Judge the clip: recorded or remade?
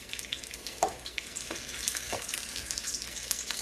remade